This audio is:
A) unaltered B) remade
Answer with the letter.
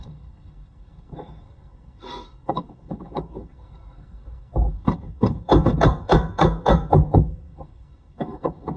B